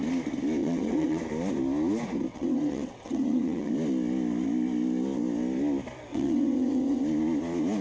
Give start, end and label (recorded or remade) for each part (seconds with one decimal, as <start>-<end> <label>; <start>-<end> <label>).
0.0-0.6 recorded; 0.6-1.2 remade; 1.2-2.3 recorded; 2.3-3.7 remade; 3.7-6.1 recorded; 6.1-7.0 remade; 7.0-7.8 recorded

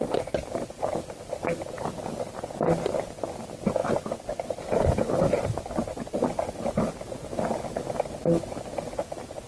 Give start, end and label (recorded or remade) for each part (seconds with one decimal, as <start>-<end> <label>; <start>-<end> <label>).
0.0-9.5 recorded